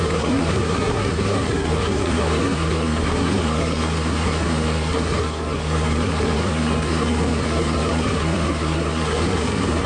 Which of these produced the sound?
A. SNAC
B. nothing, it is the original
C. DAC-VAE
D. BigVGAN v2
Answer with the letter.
A